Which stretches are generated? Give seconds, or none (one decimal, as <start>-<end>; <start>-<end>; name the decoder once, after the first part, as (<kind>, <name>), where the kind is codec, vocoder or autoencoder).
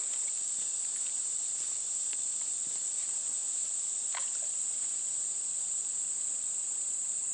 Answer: none